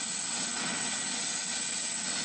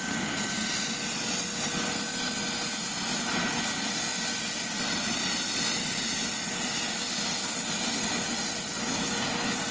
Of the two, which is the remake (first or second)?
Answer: first